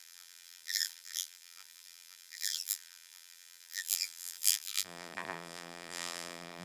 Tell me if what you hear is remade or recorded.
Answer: remade